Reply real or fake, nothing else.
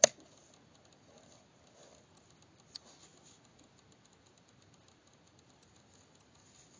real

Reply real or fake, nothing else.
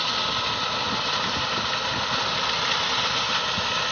real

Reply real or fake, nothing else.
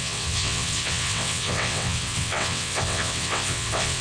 fake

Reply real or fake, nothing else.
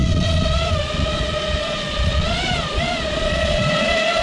fake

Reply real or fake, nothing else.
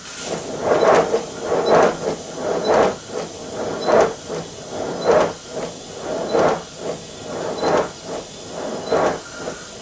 real